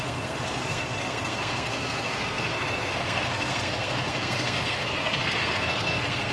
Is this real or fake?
fake